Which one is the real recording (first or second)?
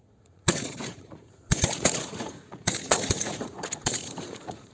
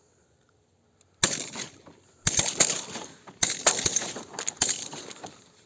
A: second